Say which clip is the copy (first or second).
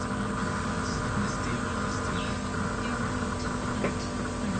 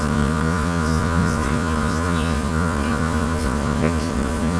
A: second